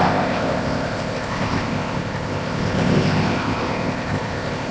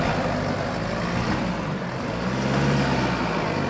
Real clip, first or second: second